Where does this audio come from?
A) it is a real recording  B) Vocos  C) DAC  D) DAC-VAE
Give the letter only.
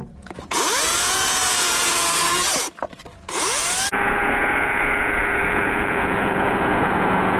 B